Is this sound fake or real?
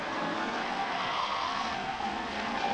fake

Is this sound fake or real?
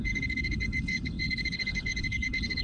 fake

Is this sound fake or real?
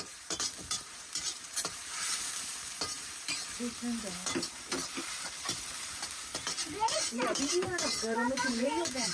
fake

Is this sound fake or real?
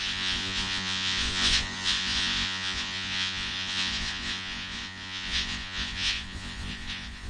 fake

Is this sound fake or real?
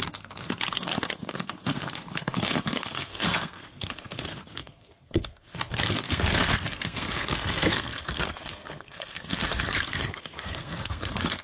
fake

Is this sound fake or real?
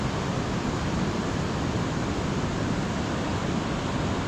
real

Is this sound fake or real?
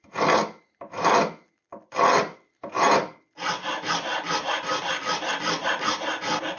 real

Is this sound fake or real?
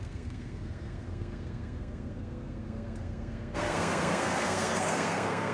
fake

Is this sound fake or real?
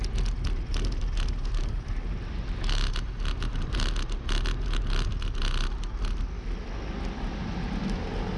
real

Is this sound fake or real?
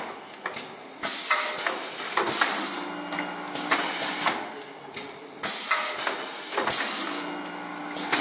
real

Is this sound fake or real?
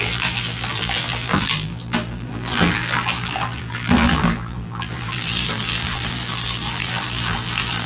fake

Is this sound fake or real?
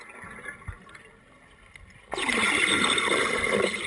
real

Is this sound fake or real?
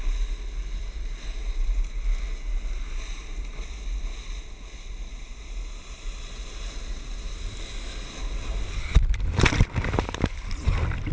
real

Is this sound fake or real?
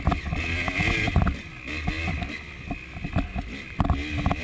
real